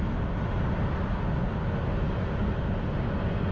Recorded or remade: recorded